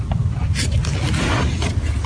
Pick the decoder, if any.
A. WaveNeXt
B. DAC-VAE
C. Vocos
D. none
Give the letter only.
D